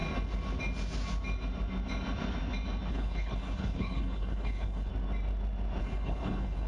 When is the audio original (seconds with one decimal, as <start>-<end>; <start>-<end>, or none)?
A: 0.0-2.9; 4.9-5.8